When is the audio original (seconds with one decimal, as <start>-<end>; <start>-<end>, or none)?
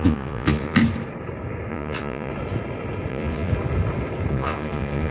0.8-1.7; 2.3-3.1; 3.5-4.3